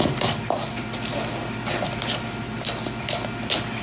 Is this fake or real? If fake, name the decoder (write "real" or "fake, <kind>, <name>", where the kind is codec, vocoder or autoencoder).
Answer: real